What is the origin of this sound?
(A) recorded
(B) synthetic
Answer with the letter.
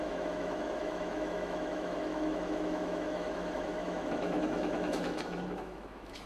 B